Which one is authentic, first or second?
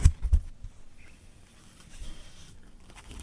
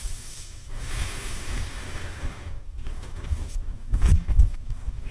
first